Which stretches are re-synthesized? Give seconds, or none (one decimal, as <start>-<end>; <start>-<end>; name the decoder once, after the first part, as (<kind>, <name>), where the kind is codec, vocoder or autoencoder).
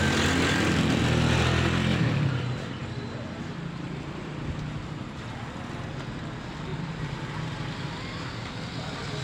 1.9-2.4 (vocoder, BigVGAN v2); 2.8-4.7; 6.7-7.2